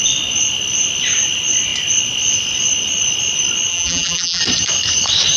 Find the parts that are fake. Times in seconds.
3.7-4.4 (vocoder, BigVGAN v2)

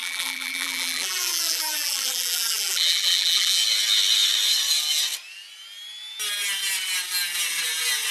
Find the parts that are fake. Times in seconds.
0.0-3.6 (vocoder, BigVGAN v2)

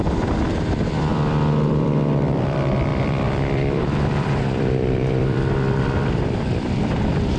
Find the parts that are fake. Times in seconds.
0.0-7.4 (vocoder, BigVGAN v2)

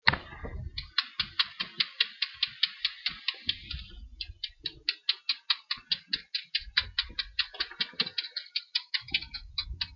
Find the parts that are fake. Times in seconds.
none